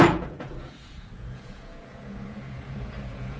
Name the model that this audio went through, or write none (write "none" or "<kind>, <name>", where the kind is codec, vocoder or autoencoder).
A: vocoder, Vocos